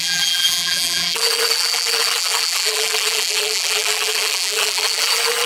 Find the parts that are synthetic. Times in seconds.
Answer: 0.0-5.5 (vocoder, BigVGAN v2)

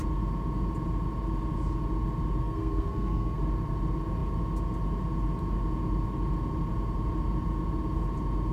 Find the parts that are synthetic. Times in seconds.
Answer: 2.4-3.4 (codec, SNAC)

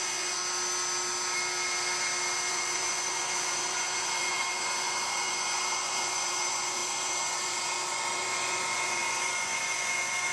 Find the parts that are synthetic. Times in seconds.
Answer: 0.0-0.4 (vocoder, Vocos); 2.5-10.3

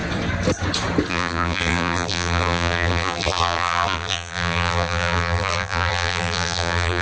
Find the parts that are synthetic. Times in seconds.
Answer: 1.1-7.0 (vocoder, BigVGAN v2)

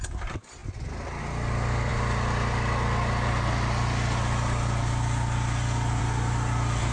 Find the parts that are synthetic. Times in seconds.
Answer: none

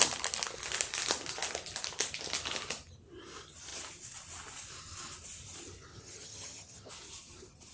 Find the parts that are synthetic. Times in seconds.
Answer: 5.9-6.9 (vocoder, HiFi-GAN)

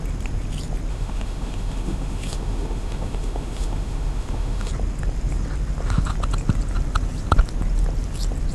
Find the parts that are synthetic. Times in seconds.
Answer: 0.9-4.7 (autoencoder, DAC-VAE)